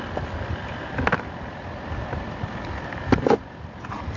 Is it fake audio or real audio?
fake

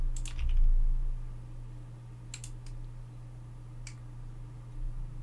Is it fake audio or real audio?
real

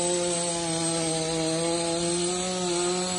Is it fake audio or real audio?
real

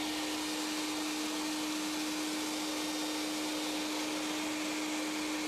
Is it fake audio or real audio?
real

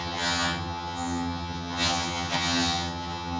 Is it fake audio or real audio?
fake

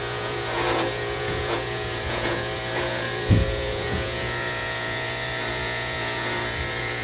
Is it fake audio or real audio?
fake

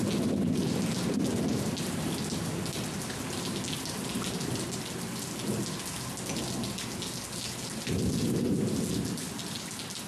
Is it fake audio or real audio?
real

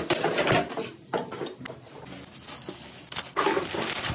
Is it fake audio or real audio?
real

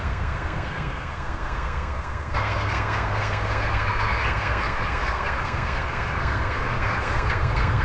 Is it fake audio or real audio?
fake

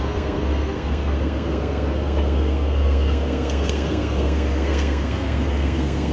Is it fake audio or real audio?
fake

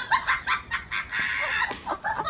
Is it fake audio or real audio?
real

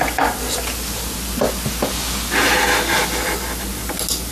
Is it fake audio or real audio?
real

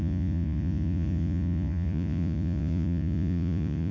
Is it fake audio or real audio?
fake